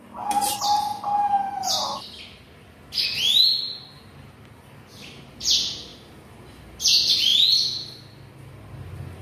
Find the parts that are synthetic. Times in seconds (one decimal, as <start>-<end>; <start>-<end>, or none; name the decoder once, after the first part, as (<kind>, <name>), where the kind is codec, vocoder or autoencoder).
none